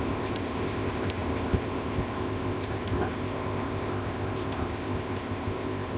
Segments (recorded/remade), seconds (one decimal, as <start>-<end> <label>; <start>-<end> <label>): 0.0-6.0 remade